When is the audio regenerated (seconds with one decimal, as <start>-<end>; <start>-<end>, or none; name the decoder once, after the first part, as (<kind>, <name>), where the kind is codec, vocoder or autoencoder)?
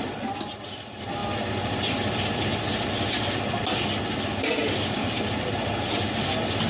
none